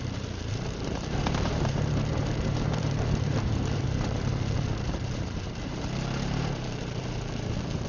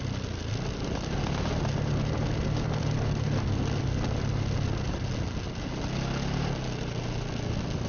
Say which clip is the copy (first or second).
first